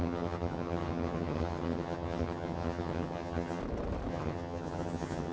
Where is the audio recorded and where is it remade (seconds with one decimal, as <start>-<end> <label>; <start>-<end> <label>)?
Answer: 0.0-3.6 remade; 3.6-4.1 recorded; 4.1-5.3 remade